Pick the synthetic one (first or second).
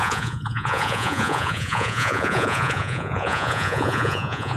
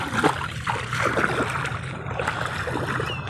first